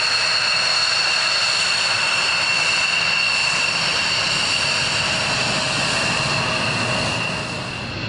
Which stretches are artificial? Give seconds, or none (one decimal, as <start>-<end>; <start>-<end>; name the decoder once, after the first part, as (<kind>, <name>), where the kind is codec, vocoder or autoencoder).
3.4-6.3 (vocoder, BigVGAN v2)